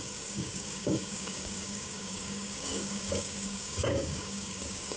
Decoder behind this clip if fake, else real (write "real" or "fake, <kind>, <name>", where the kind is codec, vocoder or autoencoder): fake, codec, DAC